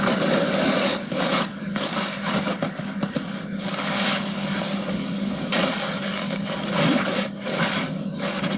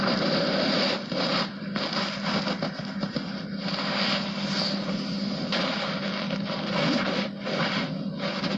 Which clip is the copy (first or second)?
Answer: first